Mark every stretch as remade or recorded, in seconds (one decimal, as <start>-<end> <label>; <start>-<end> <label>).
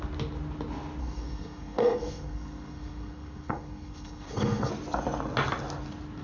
0.0-1.0 recorded; 1.0-4.7 remade; 4.7-6.2 recorded